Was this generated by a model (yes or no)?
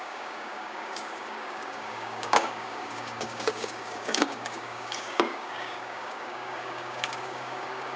yes